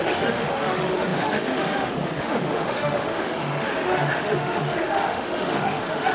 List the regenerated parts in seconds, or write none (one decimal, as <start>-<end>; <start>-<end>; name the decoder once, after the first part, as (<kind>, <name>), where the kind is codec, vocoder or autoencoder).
0.0-6.1 (autoencoder, DAC-VAE)